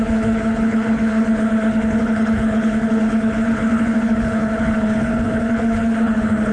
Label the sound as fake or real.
fake